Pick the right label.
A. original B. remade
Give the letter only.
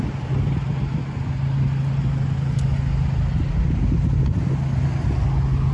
A